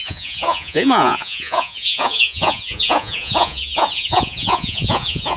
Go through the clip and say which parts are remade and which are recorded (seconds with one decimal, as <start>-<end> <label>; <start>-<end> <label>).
0.0-5.4 remade